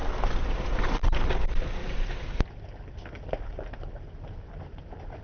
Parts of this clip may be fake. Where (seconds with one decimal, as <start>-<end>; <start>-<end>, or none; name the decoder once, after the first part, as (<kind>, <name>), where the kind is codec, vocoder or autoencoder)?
none